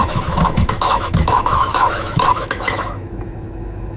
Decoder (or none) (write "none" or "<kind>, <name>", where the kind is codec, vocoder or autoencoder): autoencoder, DAC-VAE